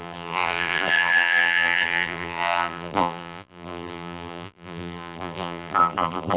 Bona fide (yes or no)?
no